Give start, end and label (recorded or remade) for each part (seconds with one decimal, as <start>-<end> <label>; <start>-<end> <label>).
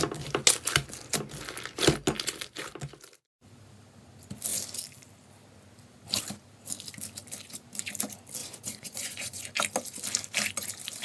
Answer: 0.0-8.4 recorded; 8.4-9.5 remade; 9.5-11.0 recorded